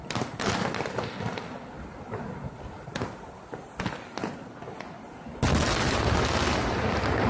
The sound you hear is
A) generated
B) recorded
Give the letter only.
B